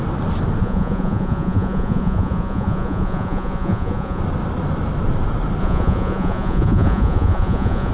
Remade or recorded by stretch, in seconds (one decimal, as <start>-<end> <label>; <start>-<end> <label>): 0.0-0.6 recorded; 0.6-4.2 remade; 4.2-5.6 recorded; 5.6-7.9 remade